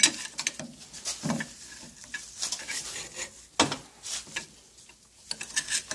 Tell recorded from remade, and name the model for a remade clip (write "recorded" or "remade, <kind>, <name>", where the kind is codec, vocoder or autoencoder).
recorded